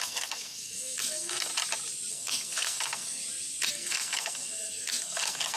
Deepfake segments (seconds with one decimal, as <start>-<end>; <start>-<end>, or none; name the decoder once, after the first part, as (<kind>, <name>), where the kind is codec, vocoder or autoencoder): 0.0-1.5 (codec, SNAC); 2.1-3.2; 3.7-5.6